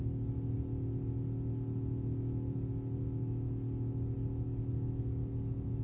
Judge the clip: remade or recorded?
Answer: recorded